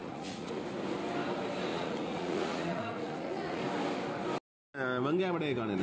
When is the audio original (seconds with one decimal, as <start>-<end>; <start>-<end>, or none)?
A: 0.6-1.7; 3.6-5.8